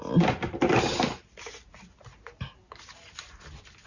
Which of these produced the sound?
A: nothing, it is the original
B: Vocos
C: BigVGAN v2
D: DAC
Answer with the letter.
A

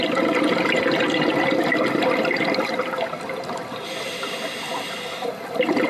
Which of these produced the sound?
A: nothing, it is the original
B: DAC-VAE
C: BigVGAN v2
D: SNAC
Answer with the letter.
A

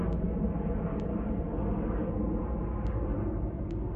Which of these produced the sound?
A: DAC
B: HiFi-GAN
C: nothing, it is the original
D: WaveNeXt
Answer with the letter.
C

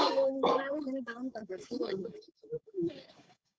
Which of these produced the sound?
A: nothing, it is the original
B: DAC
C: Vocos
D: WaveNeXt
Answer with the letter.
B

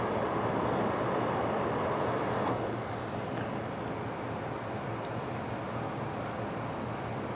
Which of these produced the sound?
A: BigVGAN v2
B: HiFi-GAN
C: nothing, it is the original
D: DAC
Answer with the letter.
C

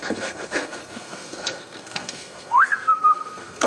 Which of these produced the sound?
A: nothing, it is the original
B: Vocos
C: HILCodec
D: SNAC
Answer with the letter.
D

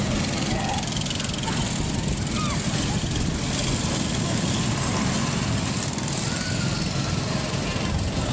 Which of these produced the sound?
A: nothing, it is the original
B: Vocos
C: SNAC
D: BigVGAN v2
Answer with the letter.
A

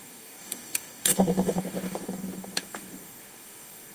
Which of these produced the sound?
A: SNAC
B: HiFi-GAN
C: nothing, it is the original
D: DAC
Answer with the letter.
D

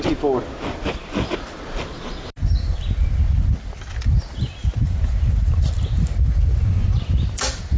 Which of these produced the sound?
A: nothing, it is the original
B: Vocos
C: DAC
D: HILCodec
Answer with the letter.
A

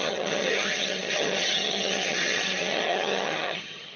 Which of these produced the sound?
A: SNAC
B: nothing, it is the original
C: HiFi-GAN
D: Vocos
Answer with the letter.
C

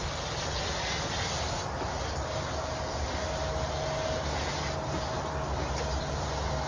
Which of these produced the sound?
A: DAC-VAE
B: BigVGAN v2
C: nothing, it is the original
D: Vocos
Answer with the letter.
C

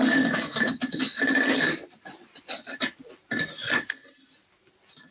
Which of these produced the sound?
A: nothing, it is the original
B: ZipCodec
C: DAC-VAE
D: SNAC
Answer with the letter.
A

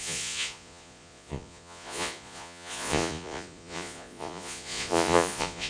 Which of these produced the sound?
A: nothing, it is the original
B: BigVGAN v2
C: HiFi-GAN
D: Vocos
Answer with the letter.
D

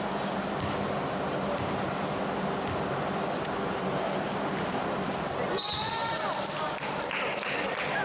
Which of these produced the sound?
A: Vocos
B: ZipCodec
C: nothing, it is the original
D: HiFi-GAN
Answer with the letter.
C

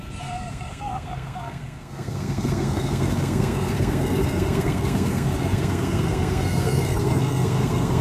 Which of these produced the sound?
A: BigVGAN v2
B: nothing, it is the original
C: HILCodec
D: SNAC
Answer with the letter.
D